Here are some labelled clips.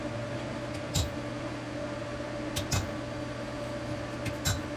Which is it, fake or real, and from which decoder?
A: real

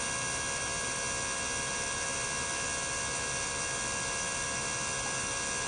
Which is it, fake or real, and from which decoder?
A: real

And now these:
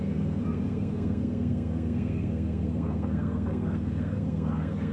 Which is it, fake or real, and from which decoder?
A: fake, codec, SNAC